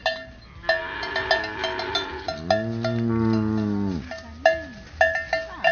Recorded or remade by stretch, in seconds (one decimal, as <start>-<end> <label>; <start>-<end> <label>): 0.0-5.7 recorded